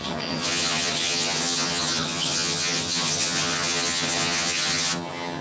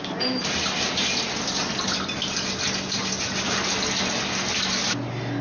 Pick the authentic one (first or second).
second